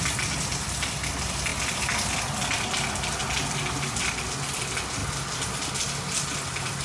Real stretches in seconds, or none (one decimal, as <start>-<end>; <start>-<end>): 0.0-6.8